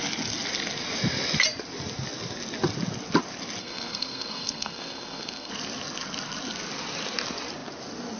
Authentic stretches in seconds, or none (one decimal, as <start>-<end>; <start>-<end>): 0.0-3.6; 5.5-8.2